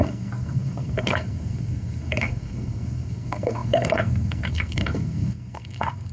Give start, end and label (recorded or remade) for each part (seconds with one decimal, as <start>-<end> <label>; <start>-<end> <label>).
0.0-6.1 remade